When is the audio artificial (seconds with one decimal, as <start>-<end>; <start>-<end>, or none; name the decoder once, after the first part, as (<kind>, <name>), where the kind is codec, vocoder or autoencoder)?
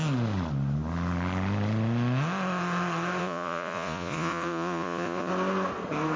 3.2-5.3 (vocoder, Vocos)